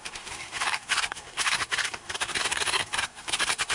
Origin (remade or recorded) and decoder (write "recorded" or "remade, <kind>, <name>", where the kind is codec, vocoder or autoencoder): remade, codec, SNAC